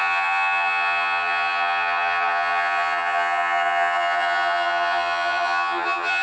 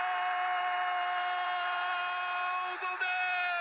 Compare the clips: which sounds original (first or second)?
second